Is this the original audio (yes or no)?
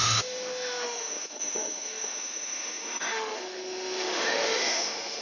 no